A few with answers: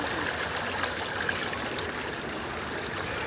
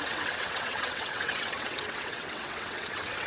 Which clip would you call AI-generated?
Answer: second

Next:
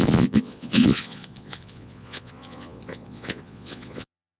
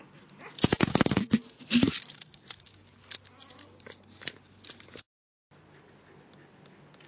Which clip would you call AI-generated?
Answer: first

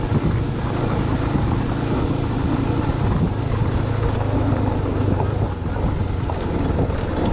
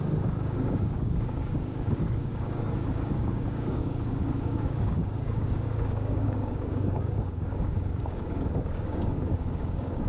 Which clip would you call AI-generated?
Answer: second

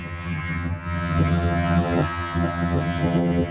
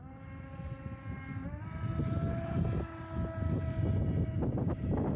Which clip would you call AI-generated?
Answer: first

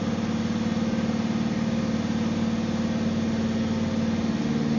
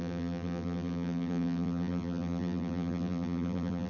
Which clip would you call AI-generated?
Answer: second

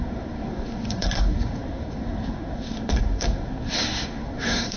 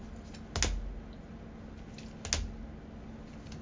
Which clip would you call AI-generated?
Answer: first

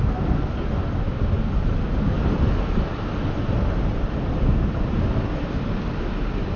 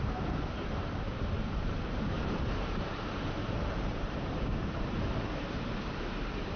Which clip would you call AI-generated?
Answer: second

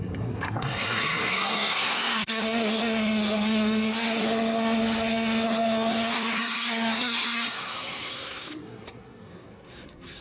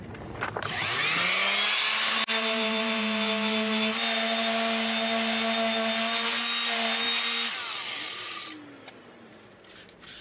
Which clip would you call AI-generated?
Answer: first